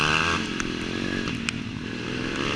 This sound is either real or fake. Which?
real